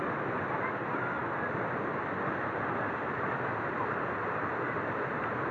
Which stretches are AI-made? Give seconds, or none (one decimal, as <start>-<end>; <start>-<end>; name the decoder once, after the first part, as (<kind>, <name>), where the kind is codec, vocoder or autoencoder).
none